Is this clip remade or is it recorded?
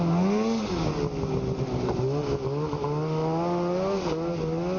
recorded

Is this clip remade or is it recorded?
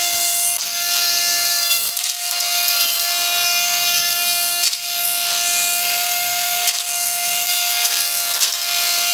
remade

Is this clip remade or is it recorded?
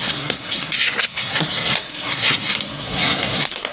remade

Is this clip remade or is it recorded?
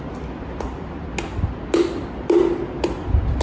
recorded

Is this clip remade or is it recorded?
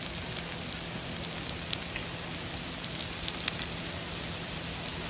recorded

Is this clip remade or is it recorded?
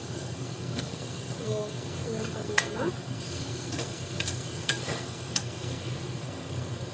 remade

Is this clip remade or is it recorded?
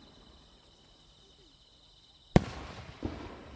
recorded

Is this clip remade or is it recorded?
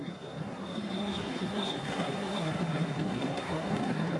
remade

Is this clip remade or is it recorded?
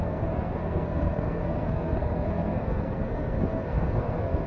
remade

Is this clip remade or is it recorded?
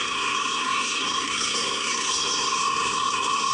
remade